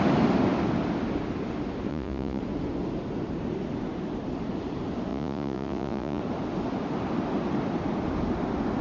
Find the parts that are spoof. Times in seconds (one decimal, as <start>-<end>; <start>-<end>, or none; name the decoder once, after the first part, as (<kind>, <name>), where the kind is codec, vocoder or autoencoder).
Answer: 1.9-2.4 (vocoder, Vocos); 5.1-6.2